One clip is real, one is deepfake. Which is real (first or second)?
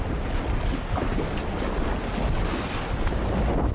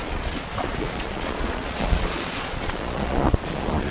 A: first